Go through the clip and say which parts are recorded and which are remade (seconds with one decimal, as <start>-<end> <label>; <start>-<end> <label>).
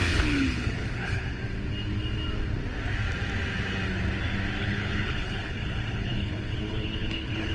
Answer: 0.0-1.4 remade; 1.4-4.6 recorded; 4.6-7.5 remade